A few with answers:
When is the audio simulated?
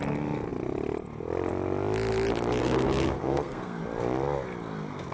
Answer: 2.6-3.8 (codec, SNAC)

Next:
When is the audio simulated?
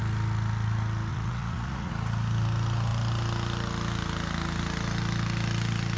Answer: 1.1-1.9 (vocoder, Vocos)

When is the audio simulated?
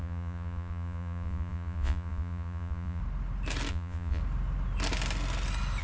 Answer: 0.0-3.0 (vocoder, Vocos); 3.7-4.2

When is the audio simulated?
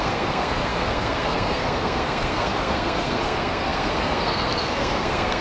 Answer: 0.0-5.4 (codec, SNAC)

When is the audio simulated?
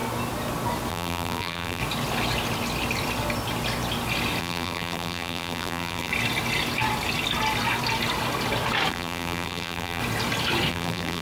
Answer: 0.9-1.8 (vocoder, BigVGAN v2); 4.4-6.1; 8.9-10.0; 10.7-11.2